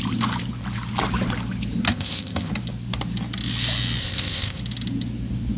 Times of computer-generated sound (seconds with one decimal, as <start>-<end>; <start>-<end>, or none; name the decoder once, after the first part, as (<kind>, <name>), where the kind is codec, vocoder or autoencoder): 1.9-2.5 (codec, ZipCodec); 4.0-4.6